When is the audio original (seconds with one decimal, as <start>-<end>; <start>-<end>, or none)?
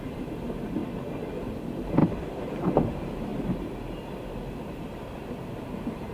0.8-1.4; 3.3-4.6